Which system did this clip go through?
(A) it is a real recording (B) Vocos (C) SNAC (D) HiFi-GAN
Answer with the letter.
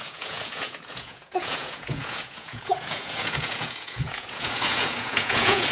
B